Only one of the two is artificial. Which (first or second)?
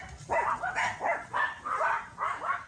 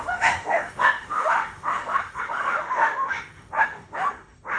second